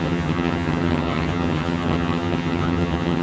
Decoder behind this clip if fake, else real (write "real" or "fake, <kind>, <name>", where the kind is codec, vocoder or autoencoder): fake, vocoder, HiFi-GAN